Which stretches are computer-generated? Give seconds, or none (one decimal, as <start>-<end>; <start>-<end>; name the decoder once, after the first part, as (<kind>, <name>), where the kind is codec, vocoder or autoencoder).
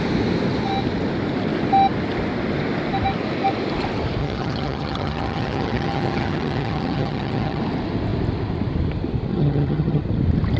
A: 4.2-7.6 (vocoder, HiFi-GAN); 9.3-10.0